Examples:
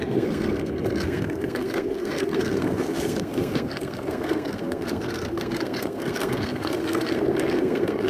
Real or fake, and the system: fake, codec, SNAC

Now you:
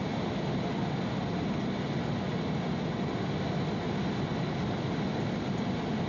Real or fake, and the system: real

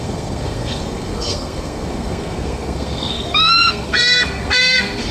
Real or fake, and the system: fake, codec, SNAC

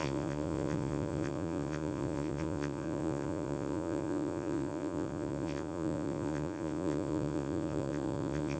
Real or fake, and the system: fake, vocoder, Vocos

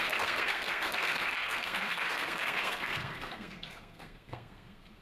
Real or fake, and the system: fake, codec, SNAC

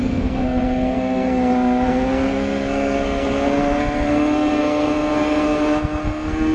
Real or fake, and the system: fake, codec, SNAC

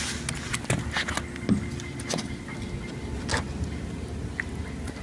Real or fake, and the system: real